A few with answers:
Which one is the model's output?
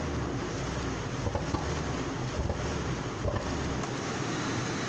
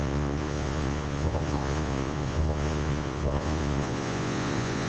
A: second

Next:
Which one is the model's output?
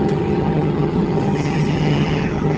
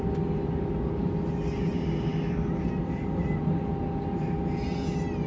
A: first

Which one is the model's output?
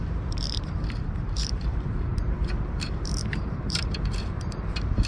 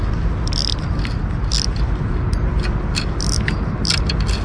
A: first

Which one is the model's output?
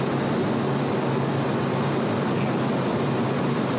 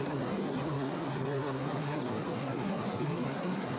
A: second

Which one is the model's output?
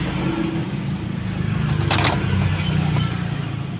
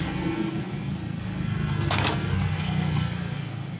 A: second